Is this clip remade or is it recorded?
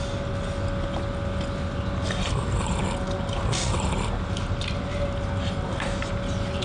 recorded